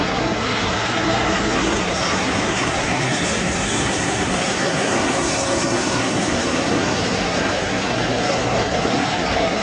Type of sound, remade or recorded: remade